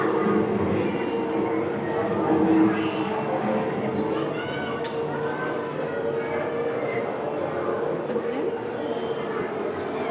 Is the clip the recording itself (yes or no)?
yes